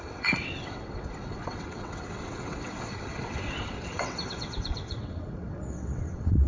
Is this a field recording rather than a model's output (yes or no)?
no